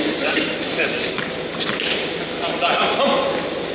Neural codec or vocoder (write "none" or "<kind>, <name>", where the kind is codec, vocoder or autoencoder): none